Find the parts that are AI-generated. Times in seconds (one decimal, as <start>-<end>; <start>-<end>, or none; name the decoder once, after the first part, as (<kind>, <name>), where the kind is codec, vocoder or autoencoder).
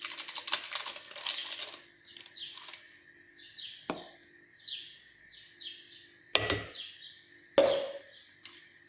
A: none